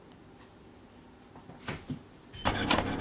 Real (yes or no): yes